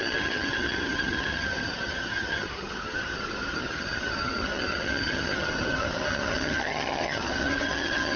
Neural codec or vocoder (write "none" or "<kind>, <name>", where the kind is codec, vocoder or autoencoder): vocoder, HiFi-GAN